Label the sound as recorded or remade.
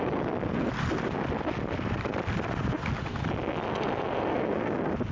recorded